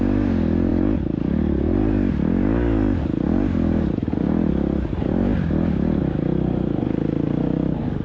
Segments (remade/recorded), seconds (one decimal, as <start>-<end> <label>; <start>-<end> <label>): 0.0-8.0 recorded